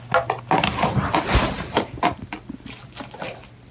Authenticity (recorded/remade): recorded